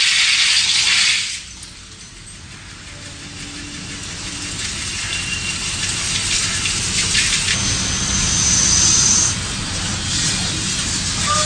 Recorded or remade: recorded